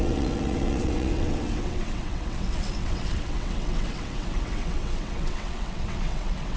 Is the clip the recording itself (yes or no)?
no